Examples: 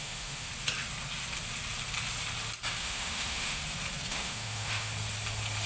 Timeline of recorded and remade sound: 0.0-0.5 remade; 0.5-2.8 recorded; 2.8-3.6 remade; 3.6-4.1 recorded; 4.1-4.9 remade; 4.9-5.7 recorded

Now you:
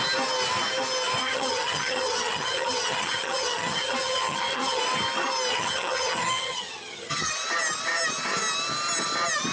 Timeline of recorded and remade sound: 0.0-1.2 recorded; 1.2-4.8 remade; 4.8-5.5 recorded; 5.5-7.3 remade; 7.3-9.5 recorded

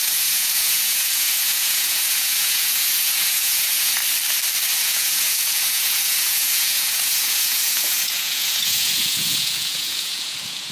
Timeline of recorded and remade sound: 0.0-4.0 remade; 4.0-4.7 recorded; 4.7-10.7 remade

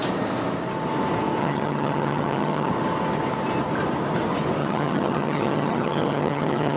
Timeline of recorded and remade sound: 0.0-1.4 recorded; 1.4-2.7 remade; 2.7-4.6 recorded; 4.6-6.8 remade